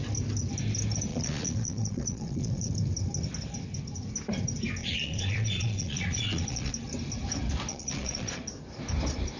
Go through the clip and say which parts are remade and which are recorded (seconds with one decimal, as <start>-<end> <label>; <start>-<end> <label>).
0.0-1.1 recorded; 1.1-2.7 remade; 2.7-4.8 recorded; 4.8-6.7 remade; 6.7-7.7 recorded; 7.7-8.4 remade; 8.4-9.4 recorded